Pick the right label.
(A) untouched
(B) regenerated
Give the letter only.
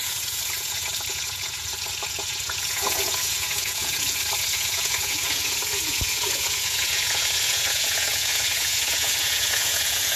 B